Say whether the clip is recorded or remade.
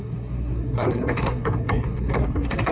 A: remade